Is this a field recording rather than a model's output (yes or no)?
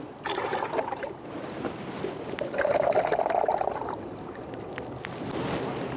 yes